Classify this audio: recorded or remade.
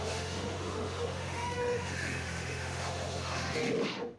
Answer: remade